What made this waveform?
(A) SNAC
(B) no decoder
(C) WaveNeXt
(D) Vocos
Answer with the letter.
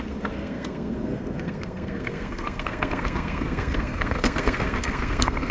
A